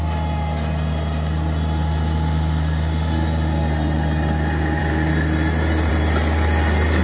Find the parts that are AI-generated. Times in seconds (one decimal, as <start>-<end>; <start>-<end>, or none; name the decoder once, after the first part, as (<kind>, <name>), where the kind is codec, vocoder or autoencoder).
none